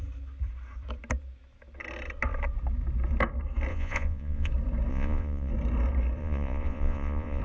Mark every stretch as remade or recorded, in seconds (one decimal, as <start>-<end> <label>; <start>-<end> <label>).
0.0-3.7 recorded; 3.7-4.5 remade; 4.5-4.9 recorded; 4.9-5.5 remade; 5.5-6.2 recorded; 6.2-7.4 remade